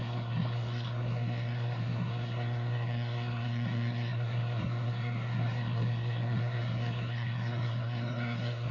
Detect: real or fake fake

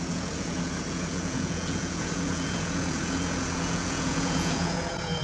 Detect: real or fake fake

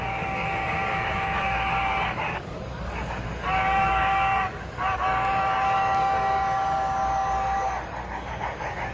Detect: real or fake fake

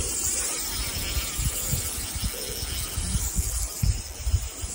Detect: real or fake fake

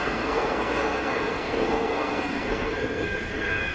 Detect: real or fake fake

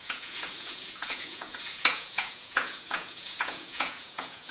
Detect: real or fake fake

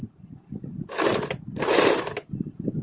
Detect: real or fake real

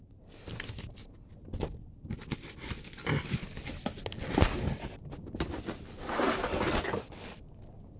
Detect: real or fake real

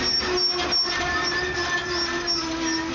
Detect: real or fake real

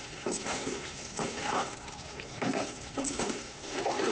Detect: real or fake fake